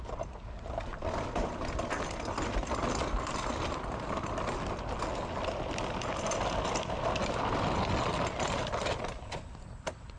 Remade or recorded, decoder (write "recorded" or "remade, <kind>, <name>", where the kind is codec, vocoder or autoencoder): recorded